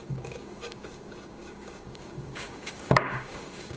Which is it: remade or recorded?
remade